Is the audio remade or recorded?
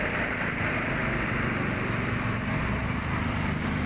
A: recorded